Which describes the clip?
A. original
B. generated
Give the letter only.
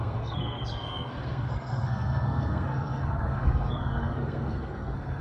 B